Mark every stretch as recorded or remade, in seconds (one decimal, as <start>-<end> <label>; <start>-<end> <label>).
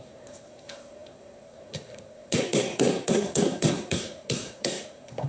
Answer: 0.0-5.3 remade